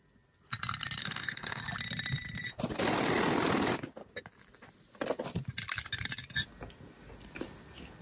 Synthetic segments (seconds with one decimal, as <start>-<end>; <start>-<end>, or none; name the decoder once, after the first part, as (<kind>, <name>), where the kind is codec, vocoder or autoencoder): 1.0-1.6 (codec, DAC)